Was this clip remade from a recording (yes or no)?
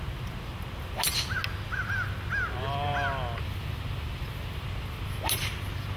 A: no